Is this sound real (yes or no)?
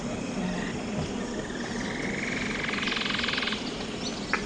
yes